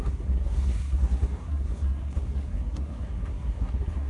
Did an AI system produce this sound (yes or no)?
yes